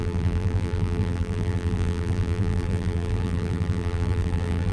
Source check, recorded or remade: remade